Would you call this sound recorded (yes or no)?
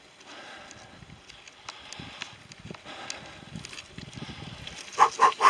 yes